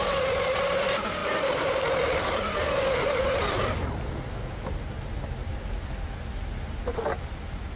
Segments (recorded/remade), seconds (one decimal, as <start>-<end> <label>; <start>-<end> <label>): 0.0-7.8 recorded